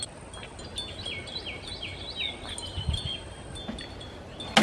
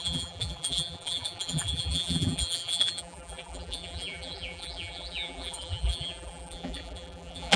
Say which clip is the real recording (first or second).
first